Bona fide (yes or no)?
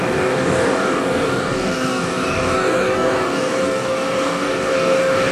no